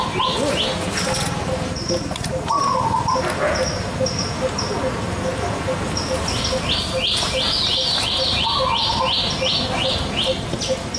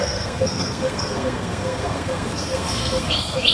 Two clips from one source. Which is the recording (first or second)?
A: first